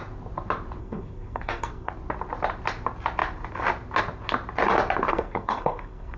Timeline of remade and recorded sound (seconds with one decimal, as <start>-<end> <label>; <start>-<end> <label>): 0.0-0.8 recorded; 0.8-1.9 remade; 1.9-5.1 recorded; 5.1-6.2 remade